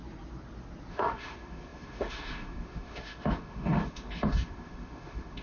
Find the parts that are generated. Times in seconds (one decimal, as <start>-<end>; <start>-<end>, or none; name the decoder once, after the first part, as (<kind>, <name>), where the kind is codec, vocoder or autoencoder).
0.9-5.4 (autoencoder, DAC-VAE)